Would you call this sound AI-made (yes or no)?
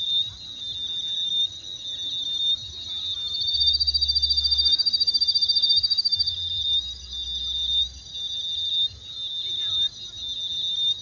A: no